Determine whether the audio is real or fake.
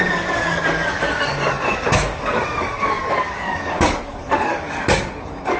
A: fake